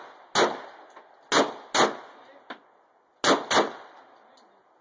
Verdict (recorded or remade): recorded